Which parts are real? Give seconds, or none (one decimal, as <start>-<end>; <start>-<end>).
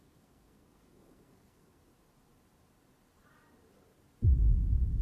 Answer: 1.9-5.0